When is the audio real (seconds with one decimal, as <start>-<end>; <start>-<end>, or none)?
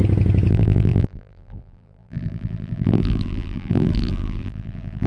0.0-0.5